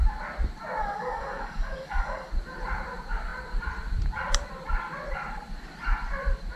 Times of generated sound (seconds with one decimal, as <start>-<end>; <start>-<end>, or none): 0.8-2.3